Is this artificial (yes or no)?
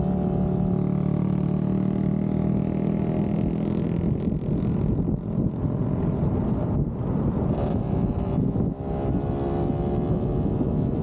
no